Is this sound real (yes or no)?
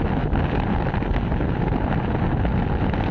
yes